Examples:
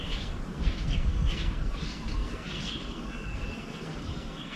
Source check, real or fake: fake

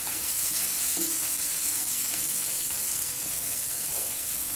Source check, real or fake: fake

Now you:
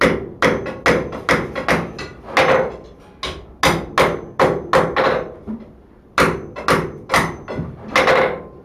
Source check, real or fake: real